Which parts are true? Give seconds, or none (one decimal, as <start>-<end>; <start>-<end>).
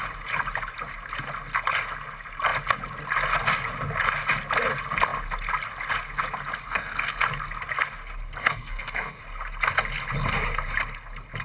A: 0.0-6.6; 7.2-8.4; 9.2-11.4